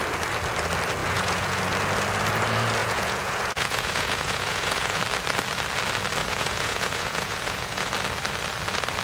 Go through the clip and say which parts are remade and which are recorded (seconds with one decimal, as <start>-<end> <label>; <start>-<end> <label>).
0.0-1.0 recorded; 1.0-1.6 remade; 1.6-2.8 recorded; 2.8-5.0 remade; 5.0-6.2 recorded; 6.2-7.9 remade; 7.9-9.0 recorded